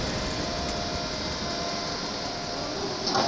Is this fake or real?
real